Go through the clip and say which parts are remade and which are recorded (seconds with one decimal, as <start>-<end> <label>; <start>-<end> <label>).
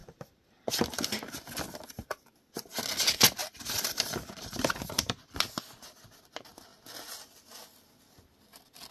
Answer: 0.0-1.0 remade; 1.0-3.4 recorded; 3.4-5.3 remade; 5.3-8.9 recorded